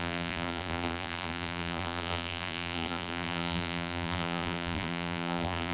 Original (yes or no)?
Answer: no